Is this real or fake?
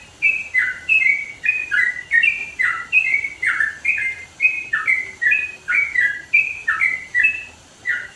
fake